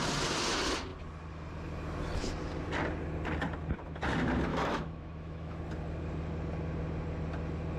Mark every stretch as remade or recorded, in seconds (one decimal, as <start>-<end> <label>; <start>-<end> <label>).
0.0-4.5 recorded; 4.5-5.6 remade; 5.6-7.8 recorded